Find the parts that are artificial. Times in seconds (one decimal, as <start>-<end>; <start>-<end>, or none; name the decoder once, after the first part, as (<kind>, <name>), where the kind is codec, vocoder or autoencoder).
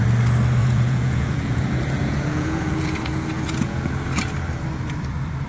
0.6-3.9 (vocoder, Vocos)